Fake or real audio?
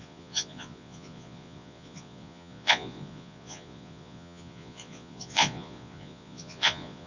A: fake